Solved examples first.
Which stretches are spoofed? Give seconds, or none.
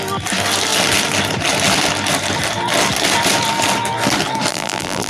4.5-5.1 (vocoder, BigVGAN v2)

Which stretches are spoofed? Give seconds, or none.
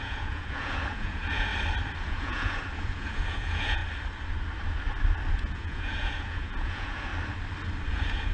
0.0-1.5 (vocoder, Vocos); 2.0-3.8; 5.3-7.1; 7.9-8.3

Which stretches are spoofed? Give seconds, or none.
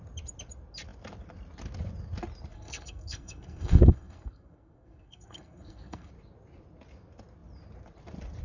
2.5-6.1 (codec, SNAC)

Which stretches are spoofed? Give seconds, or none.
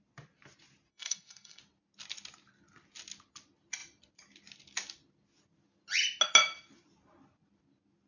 0.9-1.6 (codec, SNAC)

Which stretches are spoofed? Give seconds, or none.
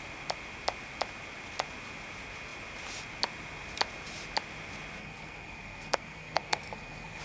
5.0-7.2 (codec, SNAC)